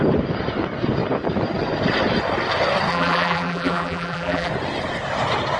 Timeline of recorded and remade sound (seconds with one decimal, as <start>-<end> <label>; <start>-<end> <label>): 0.0-2.9 recorded; 2.9-4.5 remade; 4.5-5.6 recorded